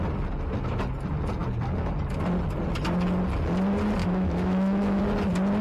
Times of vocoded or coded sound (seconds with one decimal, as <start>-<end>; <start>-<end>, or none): 4.0-5.0